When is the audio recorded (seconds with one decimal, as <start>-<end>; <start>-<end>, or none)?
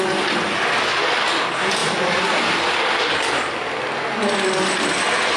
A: 0.0-5.4